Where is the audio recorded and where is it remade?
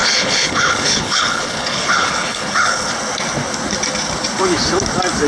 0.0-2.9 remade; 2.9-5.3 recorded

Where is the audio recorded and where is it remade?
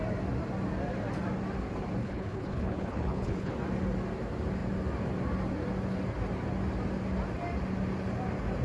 0.0-2.0 recorded; 2.0-3.5 remade; 3.5-8.6 recorded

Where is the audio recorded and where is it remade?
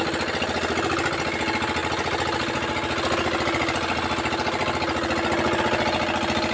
0.0-6.5 recorded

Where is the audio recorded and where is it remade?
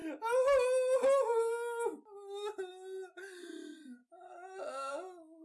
0.0-5.4 recorded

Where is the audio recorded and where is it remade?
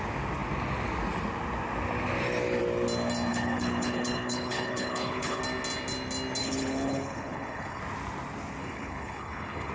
0.0-3.3 recorded; 3.3-5.4 remade; 5.4-6.4 recorded; 6.4-7.8 remade; 7.8-8.6 recorded; 8.6-9.7 remade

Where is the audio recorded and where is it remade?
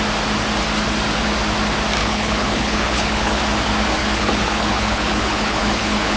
0.0-2.0 recorded; 2.0-3.4 remade; 3.4-4.0 recorded; 4.0-6.2 remade